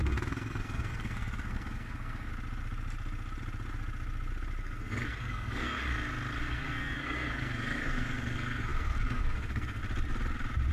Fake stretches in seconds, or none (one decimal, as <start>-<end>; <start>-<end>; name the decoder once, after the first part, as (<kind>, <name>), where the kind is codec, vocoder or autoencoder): 0.0-2.3 (codec, SNAC); 4.6-5.8; 6.4-9.8